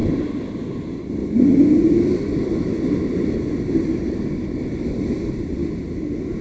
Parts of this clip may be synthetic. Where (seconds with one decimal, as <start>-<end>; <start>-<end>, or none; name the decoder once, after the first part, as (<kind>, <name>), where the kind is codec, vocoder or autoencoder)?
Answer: 0.0-1.2 (vocoder, BigVGAN v2); 2.3-5.6